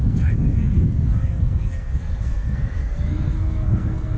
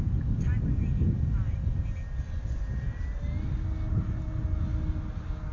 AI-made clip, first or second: first